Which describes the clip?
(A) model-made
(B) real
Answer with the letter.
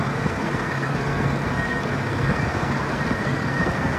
A